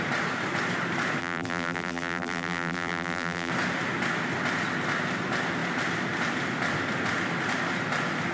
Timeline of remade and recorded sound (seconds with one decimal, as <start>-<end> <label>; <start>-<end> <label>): 0.0-1.2 recorded; 1.2-3.5 remade; 3.5-8.3 recorded